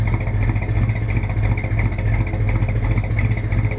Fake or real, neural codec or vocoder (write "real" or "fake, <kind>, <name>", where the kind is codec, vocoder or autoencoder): real